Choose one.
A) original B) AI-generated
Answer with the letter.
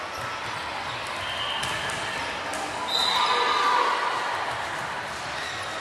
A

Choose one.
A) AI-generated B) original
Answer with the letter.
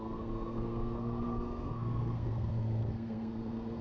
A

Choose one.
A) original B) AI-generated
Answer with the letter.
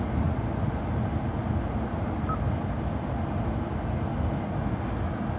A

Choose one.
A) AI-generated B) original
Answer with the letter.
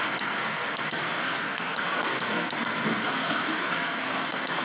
A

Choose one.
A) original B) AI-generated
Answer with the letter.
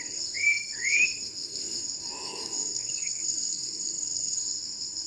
B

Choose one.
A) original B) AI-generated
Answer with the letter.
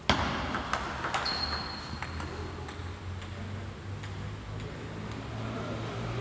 A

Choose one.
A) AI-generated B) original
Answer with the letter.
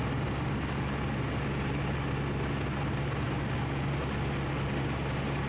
B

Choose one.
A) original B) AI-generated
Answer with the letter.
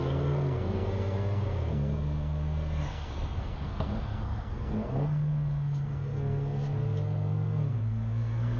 B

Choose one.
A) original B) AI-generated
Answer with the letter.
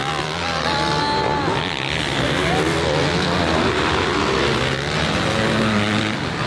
A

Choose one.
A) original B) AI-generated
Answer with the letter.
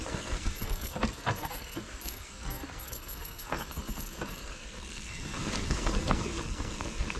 B